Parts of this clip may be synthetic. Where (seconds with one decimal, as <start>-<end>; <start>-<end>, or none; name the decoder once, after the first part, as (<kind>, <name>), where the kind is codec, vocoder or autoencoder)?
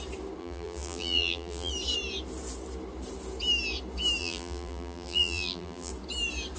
0.4-1.7 (vocoder, BigVGAN v2); 4.2-5.9